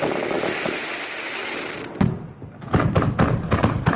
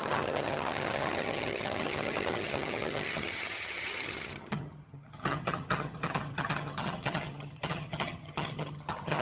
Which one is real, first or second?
first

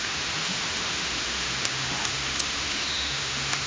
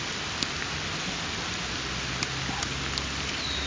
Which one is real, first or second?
second